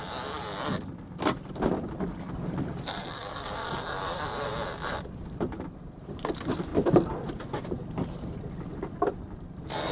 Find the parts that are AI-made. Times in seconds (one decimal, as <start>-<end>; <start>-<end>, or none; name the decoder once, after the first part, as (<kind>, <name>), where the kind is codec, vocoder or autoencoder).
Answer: none